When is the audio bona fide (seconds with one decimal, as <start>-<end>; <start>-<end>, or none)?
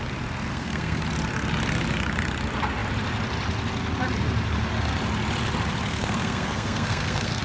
0.0-0.5; 1.0-5.9